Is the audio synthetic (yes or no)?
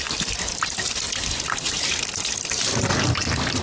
no